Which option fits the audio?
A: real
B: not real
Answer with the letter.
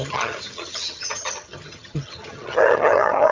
B